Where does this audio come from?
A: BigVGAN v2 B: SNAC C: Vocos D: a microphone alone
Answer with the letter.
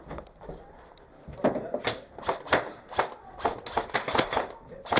D